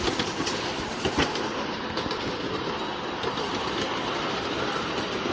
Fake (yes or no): no